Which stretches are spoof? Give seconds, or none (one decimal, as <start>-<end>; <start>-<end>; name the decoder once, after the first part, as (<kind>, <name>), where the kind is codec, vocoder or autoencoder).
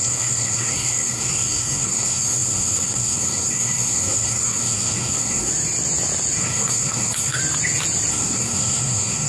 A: 0.0-5.5 (codec, SNAC); 6.4-7.4; 8.1-9.3